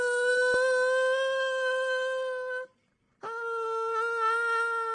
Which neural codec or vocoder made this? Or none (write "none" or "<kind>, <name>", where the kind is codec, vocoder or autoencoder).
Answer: none